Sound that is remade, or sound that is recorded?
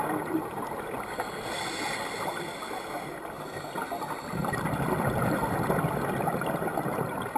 recorded